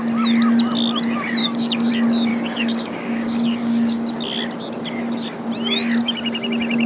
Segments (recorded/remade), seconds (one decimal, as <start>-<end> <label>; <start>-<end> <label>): 0.0-1.4 recorded; 1.4-1.9 remade; 1.9-2.3 recorded; 2.3-4.1 remade; 4.1-6.9 recorded